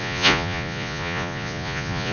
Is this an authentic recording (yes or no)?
no